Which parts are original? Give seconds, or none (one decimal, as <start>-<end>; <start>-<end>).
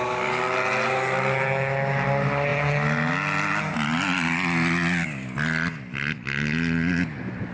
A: 0.0-7.5